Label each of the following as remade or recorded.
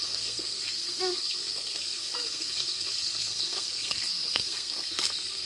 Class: remade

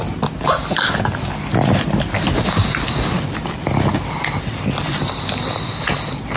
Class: recorded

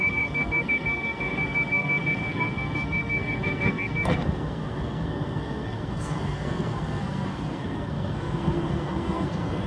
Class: remade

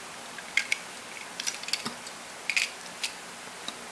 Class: recorded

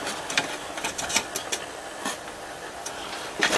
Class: recorded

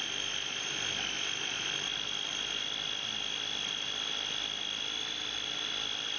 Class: recorded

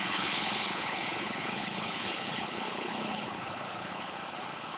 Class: remade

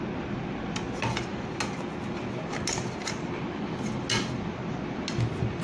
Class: recorded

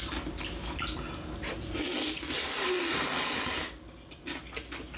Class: recorded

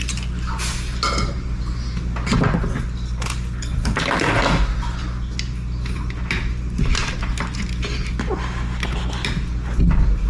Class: recorded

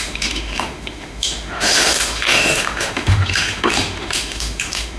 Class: remade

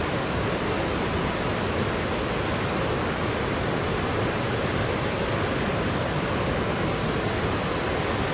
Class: recorded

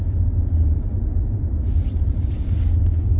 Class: recorded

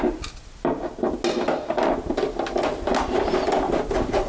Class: recorded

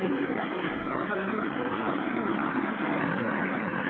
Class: remade